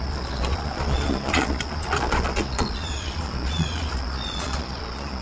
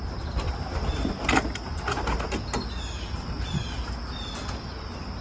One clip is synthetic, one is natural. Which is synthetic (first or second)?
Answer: first